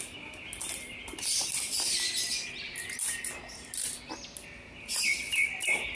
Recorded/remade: recorded